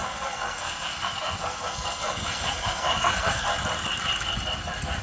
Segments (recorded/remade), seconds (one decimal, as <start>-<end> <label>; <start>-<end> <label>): 0.0-3.5 remade; 3.5-5.0 recorded